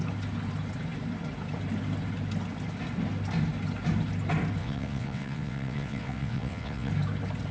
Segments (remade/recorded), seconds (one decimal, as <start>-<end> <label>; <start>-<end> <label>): 0.0-4.6 recorded; 4.6-6.9 remade; 6.9-7.5 recorded

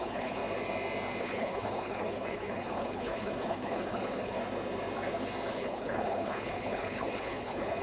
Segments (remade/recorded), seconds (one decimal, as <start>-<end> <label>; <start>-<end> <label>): 0.0-0.4 remade; 0.4-1.2 recorded; 1.2-4.4 remade; 4.4-5.5 recorded; 5.5-7.8 remade

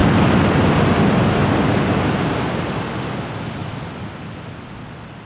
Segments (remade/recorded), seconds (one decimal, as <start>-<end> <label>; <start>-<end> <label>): 0.0-5.3 recorded

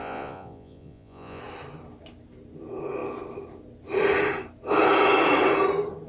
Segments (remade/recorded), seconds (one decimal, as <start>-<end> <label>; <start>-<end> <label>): 0.0-1.4 remade; 1.4-6.1 recorded

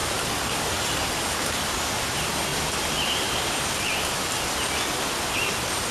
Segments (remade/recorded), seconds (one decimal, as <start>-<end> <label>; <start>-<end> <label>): 0.0-5.9 recorded

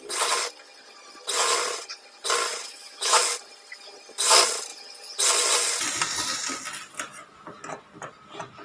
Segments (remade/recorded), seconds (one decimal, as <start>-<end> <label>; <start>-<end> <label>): 0.0-2.7 recorded; 2.7-3.2 remade; 3.2-8.6 recorded

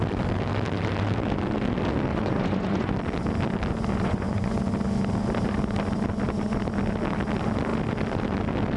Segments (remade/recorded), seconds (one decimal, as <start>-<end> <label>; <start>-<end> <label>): 0.0-2.1 recorded; 2.1-2.9 remade; 2.9-3.9 recorded; 3.9-4.5 remade; 4.5-8.8 recorded

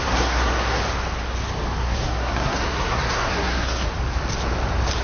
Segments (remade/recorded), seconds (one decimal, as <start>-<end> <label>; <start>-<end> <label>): 0.0-0.8 remade; 0.8-1.8 recorded; 1.8-3.8 remade; 3.8-5.0 recorded